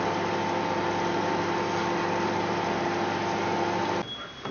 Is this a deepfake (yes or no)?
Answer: no